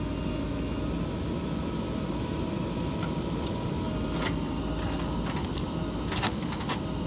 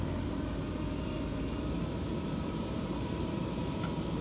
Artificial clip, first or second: second